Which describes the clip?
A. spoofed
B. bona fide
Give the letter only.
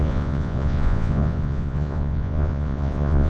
A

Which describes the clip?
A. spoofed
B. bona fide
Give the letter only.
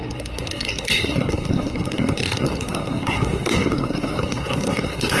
A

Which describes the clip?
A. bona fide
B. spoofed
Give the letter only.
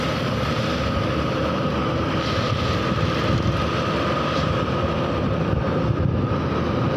B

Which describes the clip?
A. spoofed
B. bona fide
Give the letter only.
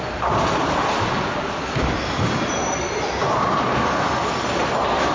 B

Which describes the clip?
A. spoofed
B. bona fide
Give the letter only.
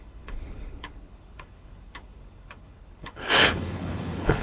A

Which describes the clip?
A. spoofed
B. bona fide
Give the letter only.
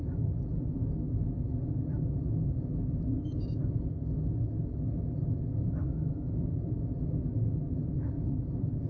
A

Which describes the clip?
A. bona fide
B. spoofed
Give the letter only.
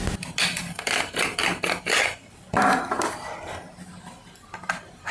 A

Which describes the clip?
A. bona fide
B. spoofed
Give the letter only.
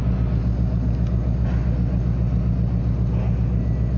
A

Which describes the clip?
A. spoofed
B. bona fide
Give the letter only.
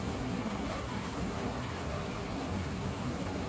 A